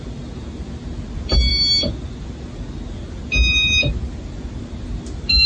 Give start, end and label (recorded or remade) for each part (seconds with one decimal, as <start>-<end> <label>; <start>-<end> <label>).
0.0-5.5 recorded